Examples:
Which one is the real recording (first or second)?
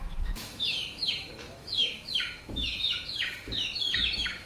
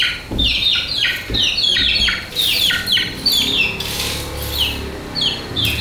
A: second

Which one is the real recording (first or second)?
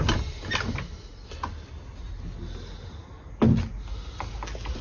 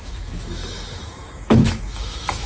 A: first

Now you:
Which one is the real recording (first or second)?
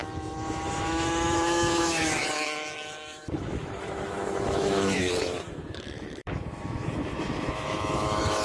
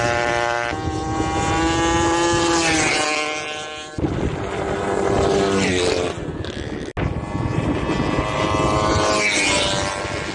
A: second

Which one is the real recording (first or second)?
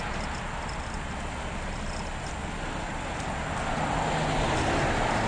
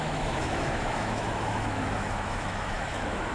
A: first